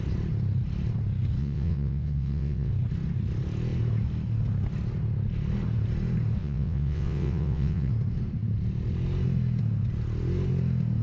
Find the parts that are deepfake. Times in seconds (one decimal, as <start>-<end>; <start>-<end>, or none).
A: 1.4-2.7; 6.4-7.9